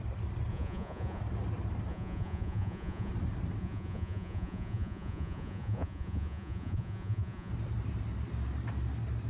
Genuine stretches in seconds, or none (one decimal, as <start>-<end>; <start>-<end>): 0.0-0.5; 1.2-1.9; 3.1-3.6; 7.5-9.3